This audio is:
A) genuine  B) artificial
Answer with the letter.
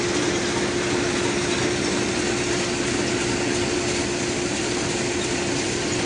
A